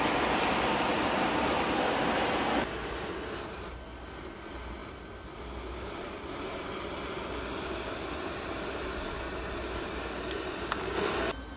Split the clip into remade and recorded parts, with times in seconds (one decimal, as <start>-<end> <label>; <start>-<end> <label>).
0.0-11.6 recorded